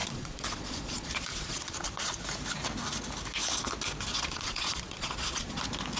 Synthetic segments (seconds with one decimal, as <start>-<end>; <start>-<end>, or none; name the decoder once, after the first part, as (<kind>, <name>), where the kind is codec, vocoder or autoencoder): 0.0-2.2 (vocoder, Vocos); 4.1-5.6